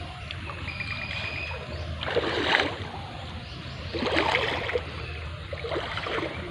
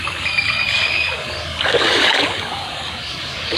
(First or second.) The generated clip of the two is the second